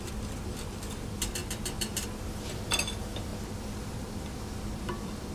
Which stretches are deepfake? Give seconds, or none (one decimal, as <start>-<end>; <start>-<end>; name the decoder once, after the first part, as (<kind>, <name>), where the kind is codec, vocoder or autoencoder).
0.0-5.3 (vocoder, BigVGAN v2)